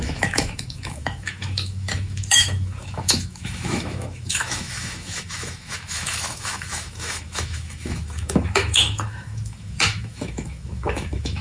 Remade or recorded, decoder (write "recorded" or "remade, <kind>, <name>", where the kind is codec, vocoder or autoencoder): remade, autoencoder, DAC-VAE